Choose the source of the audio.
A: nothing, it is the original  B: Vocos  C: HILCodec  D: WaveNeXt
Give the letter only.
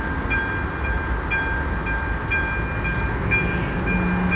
A